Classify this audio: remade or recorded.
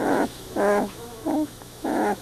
remade